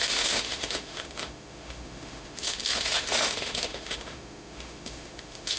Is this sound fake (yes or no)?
yes